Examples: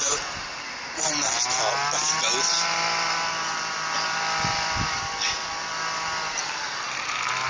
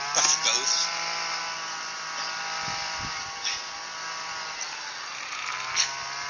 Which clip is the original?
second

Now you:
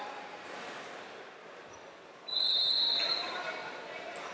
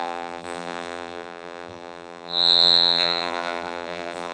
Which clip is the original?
first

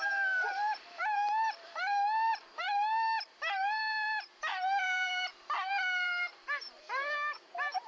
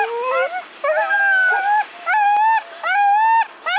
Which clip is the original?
second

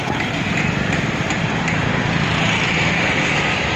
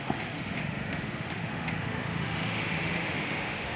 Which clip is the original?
first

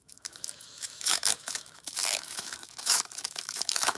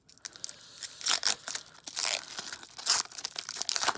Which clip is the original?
second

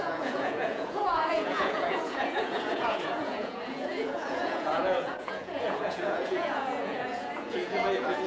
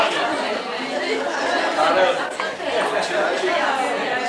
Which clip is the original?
second